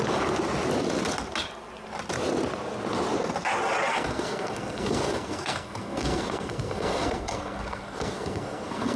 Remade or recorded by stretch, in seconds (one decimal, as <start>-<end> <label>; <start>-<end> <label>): 0.0-3.9 recorded; 3.9-9.0 remade

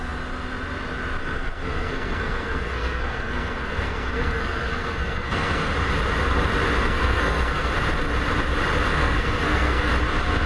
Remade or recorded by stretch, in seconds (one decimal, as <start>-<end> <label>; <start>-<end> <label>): 0.0-1.2 recorded; 1.2-5.7 remade; 5.7-6.8 recorded; 6.8-7.7 remade; 7.7-8.9 recorded; 8.9-9.9 remade; 9.9-10.5 recorded